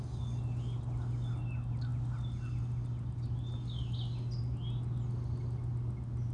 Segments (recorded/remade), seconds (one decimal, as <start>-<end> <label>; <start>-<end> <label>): 0.0-6.3 recorded